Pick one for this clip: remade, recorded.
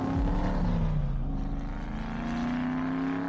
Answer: recorded